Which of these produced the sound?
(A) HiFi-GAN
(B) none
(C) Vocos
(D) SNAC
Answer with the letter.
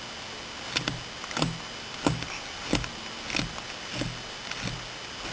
B